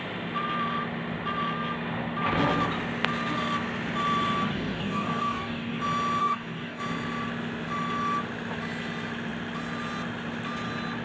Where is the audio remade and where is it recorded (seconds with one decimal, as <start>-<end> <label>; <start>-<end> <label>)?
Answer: 0.0-4.5 recorded; 4.5-5.8 remade; 5.8-6.2 recorded; 6.2-6.8 remade; 6.8-11.0 recorded